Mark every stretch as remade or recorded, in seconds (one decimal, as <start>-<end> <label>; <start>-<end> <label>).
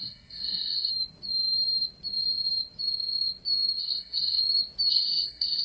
0.0-0.9 remade; 0.9-3.8 recorded; 3.8-4.4 remade; 4.4-4.9 recorded; 4.9-5.6 remade